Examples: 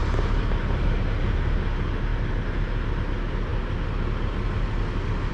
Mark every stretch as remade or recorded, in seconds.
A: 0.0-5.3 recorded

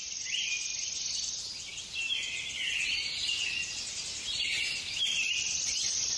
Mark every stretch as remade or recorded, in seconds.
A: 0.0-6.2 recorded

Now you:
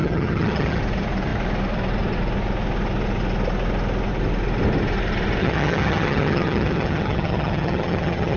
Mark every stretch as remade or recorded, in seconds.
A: 0.0-0.8 remade; 0.8-5.4 recorded; 5.4-8.4 remade

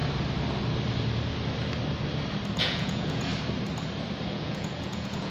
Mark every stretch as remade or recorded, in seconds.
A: 0.0-2.6 recorded; 2.6-3.3 remade; 3.3-4.3 recorded; 4.3-5.3 remade

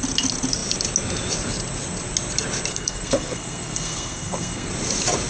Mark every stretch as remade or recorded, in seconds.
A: 0.0-2.7 recorded; 2.7-4.7 remade; 4.7-5.3 recorded

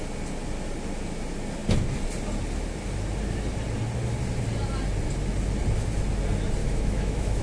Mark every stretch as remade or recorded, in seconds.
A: 0.0-6.6 recorded; 6.6-7.4 remade